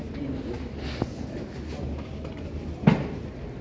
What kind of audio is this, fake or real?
real